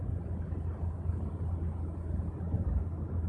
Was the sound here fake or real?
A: real